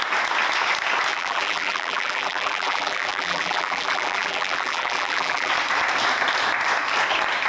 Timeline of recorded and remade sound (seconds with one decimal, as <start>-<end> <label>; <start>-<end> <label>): 0.0-1.1 recorded; 1.1-5.5 remade; 5.5-7.5 recorded